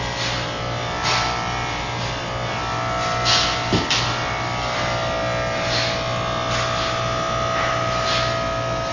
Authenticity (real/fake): real